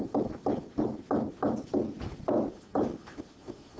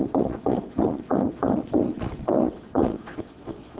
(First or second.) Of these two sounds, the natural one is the first